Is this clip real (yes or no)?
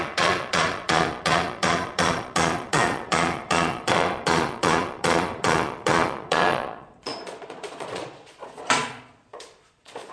no